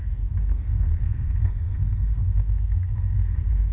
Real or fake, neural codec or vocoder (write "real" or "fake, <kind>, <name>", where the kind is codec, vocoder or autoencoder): fake, codec, SNAC